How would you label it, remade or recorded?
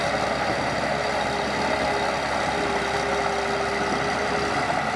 recorded